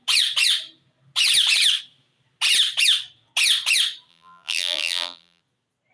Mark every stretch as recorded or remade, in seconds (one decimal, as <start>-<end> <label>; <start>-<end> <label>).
0.0-4.1 recorded; 4.1-5.4 remade; 5.4-5.9 recorded

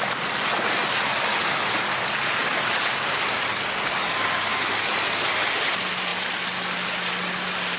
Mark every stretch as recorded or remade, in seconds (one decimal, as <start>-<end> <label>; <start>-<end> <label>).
0.0-7.8 recorded

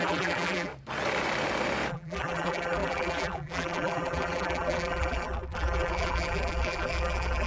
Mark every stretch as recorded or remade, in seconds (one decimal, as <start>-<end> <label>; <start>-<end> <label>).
0.0-0.7 remade; 0.7-1.9 recorded; 1.9-7.5 remade

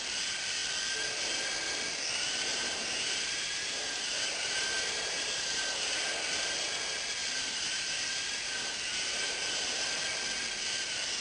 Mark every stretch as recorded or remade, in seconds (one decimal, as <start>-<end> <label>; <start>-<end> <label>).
0.0-2.5 recorded; 2.5-5.9 remade; 5.9-7.2 recorded; 7.2-10.0 remade; 10.0-11.2 recorded

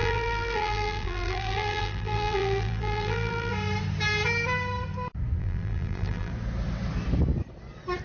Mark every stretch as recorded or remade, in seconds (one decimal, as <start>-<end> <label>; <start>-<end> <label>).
0.0-3.5 remade; 3.5-5.4 recorded; 5.4-6.3 remade; 6.3-8.0 recorded

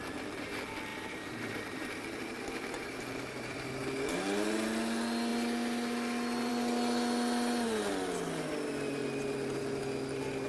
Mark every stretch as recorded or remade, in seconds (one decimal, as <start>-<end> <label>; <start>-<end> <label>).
0.0-0.9 recorded; 0.9-3.7 remade; 3.7-10.5 recorded

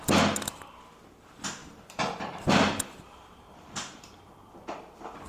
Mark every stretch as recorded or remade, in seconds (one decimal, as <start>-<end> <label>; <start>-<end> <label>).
0.0-1.6 recorded; 1.6-4.8 remade; 4.8-5.3 recorded